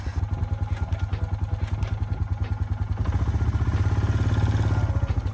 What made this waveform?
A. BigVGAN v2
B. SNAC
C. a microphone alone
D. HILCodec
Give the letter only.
C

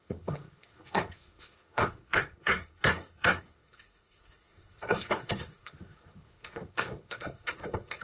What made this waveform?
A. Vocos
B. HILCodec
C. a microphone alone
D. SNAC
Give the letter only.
D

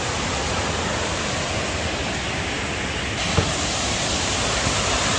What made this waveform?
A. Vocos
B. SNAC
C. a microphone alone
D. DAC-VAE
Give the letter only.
C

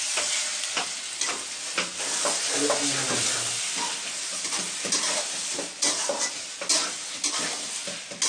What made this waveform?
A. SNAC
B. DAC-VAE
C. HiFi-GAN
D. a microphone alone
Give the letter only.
D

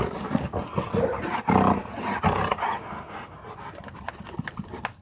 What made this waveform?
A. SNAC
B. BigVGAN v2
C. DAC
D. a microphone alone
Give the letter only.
D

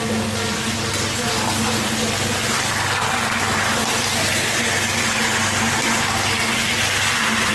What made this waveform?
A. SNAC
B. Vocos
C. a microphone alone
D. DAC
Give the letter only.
C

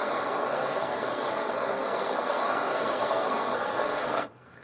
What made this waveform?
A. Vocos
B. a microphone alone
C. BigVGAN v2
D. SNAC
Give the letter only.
D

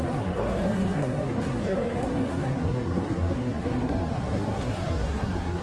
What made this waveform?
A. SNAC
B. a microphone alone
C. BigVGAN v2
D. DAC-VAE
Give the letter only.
A